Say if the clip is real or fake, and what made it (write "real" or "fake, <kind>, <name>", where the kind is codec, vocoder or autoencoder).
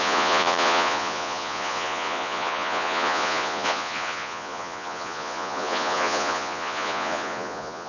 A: fake, vocoder, Vocos